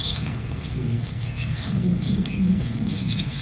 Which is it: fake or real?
fake